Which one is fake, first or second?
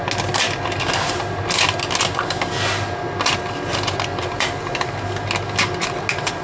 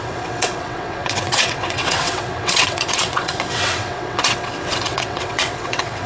second